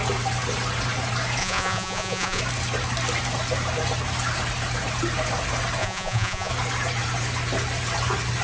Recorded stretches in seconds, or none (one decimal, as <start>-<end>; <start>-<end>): 0.0-1.4; 2.4-5.8; 6.5-8.4